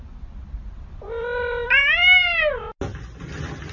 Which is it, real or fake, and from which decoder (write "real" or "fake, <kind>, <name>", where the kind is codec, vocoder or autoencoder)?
real